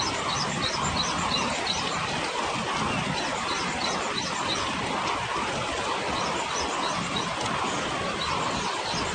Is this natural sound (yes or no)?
yes